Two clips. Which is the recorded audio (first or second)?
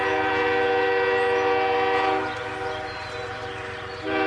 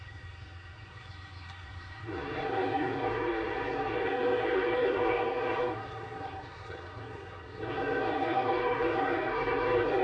first